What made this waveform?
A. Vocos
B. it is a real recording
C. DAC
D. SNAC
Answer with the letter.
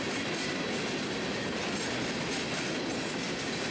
B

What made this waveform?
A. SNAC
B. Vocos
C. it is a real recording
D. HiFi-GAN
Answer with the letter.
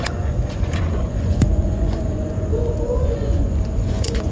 B